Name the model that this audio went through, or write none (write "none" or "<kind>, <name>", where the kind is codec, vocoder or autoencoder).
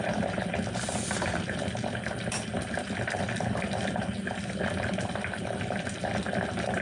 none